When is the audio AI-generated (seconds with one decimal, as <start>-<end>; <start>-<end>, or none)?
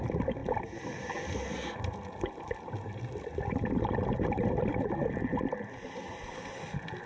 5.3-6.2